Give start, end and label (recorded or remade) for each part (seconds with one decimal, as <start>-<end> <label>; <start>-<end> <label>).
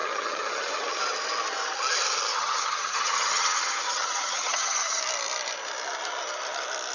0.0-1.0 remade; 1.0-2.3 recorded; 2.3-5.0 remade; 5.0-6.9 recorded